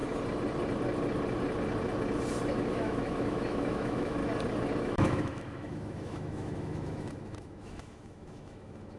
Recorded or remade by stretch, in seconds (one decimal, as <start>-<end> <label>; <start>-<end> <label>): 0.0-2.5 recorded; 2.5-4.2 remade; 4.2-4.8 recorded; 4.8-9.0 remade